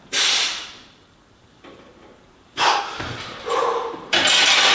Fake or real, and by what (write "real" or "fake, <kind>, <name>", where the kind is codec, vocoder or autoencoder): fake, vocoder, BigVGAN v2